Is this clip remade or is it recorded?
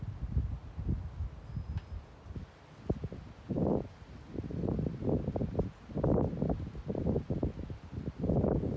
recorded